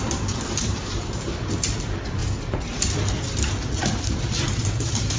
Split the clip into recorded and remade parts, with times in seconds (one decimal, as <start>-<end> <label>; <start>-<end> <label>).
0.0-2.2 remade; 2.2-3.8 recorded; 3.8-5.2 remade